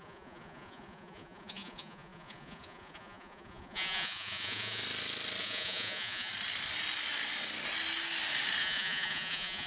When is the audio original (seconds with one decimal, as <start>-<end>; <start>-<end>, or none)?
4.8-5.4; 6.3-8.6